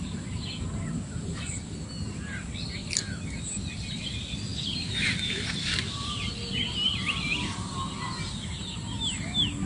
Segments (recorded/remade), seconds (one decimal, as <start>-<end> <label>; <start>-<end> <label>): 0.0-9.7 recorded